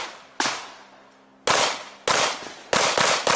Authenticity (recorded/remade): recorded